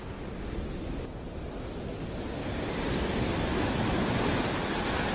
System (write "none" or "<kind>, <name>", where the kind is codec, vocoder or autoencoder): none